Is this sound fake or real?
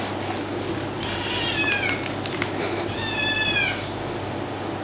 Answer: real